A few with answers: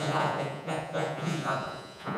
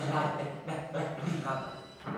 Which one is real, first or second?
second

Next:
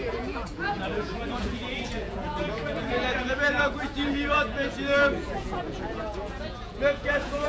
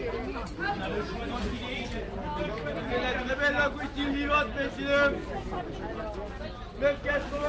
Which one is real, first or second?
second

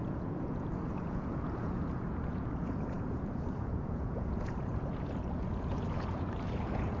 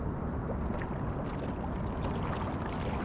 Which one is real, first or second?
second